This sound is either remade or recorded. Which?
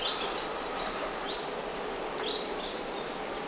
recorded